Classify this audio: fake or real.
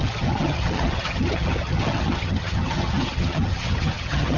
fake